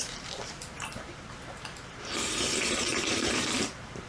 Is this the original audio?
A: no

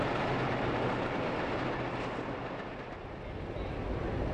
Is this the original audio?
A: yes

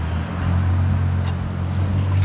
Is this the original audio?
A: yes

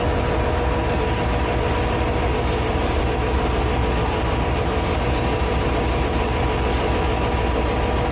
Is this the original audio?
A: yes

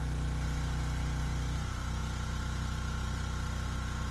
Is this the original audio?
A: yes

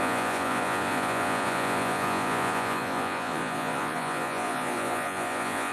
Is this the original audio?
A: no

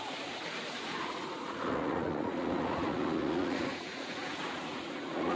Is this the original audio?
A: no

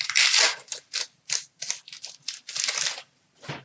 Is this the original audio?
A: yes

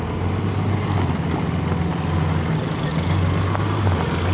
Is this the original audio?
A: yes